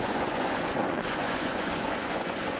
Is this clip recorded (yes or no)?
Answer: no